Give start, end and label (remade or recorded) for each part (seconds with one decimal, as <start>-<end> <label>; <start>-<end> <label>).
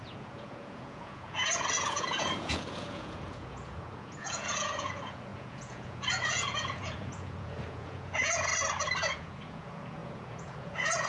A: 0.0-8.5 remade; 8.5-9.1 recorded; 9.1-11.1 remade